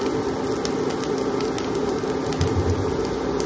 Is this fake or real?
real